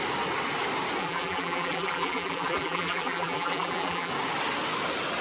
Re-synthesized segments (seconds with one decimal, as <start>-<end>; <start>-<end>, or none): 1.0-4.1